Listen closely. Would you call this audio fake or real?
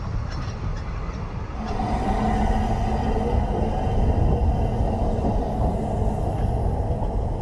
real